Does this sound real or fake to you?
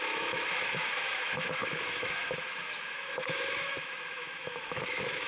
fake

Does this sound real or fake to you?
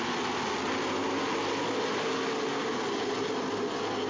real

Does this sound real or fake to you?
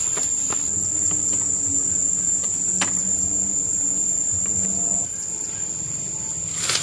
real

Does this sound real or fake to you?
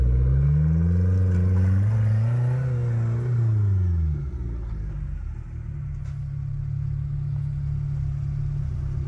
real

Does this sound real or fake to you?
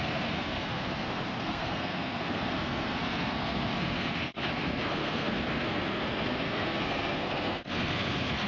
fake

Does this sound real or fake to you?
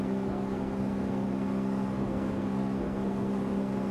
fake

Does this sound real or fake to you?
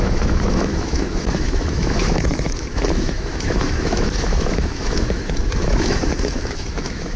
fake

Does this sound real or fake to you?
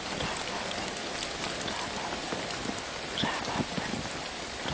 real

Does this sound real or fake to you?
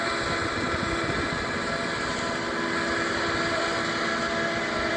real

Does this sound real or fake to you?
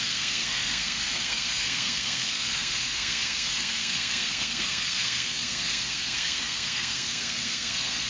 fake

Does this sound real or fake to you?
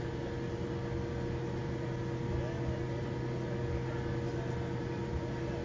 real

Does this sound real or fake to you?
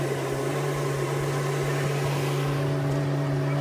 real